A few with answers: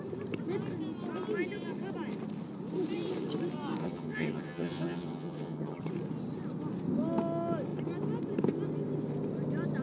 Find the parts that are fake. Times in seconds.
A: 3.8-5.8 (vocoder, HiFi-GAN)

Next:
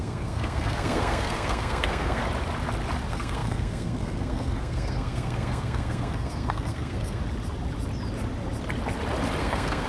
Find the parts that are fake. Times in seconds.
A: 0.0-2.2 (codec, SNAC); 3.0-7.2; 9.4-9.9

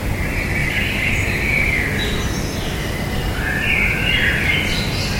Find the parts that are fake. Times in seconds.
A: 0.6-1.1 (codec, DAC)

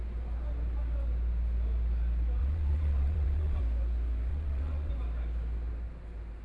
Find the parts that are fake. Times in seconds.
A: 2.4-3.6 (vocoder, WaveNeXt); 4.3-4.9

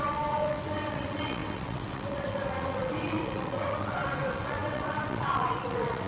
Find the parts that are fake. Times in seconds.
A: 0.0-6.1 (vocoder, WaveNeXt)

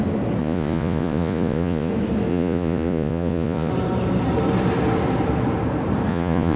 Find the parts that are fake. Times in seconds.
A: 0.4-1.9 (vocoder, Vocos); 2.3-3.7; 6.1-6.6

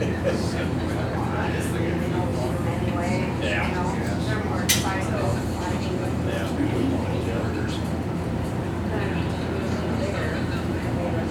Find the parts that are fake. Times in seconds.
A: 2.3-2.9 (vocoder, BigVGAN v2); 5.3-8.8